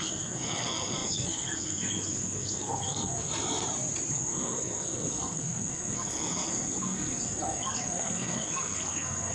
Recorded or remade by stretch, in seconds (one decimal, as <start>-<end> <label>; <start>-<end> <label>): 0.0-3.3 remade; 3.3-4.1 recorded; 4.1-9.3 remade